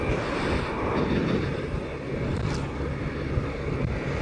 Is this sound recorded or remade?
recorded